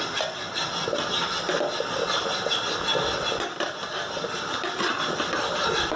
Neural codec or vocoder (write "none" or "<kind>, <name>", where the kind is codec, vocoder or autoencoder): none